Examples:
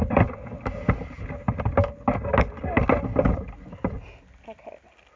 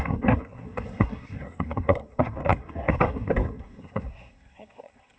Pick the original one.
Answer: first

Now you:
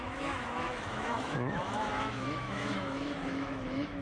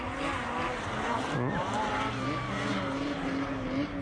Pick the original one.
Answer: second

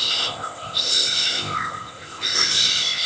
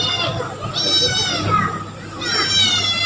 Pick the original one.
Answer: second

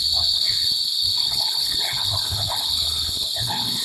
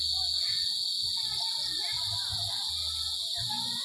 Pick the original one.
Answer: second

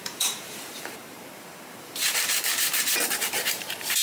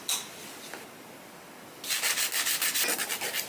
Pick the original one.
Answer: second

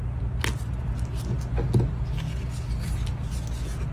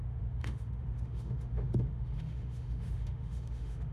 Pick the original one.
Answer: first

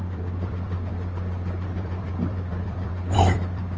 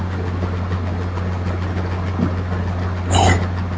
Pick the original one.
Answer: second